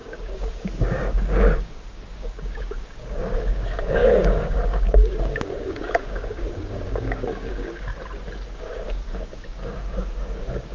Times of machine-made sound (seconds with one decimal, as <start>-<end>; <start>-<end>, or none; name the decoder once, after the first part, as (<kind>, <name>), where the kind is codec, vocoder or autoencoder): 0.0-7.9 (codec, DAC); 8.5-10.7